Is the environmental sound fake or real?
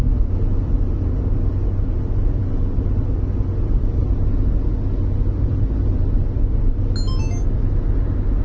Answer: real